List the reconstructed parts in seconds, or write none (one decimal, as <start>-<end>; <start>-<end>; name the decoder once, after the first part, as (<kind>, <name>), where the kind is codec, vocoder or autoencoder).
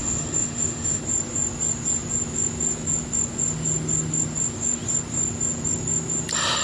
0.0-1.0 (autoencoder, DAC-VAE)